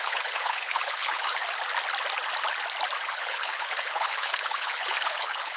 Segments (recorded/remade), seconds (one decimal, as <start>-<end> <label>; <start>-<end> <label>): 0.0-1.4 remade; 1.4-3.1 recorded; 3.1-5.6 remade